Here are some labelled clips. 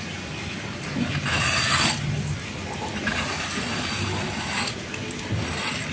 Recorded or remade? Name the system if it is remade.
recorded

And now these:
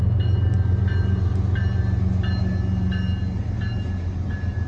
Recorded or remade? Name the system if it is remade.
recorded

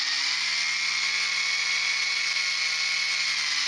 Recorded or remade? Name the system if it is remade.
recorded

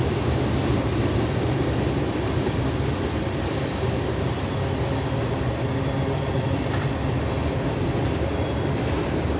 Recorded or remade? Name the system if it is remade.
recorded